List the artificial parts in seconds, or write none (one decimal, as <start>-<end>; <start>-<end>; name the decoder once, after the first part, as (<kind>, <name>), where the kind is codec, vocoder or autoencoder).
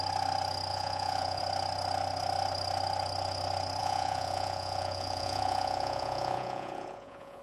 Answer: 0.7-1.4 (vocoder, Vocos); 3.8-7.4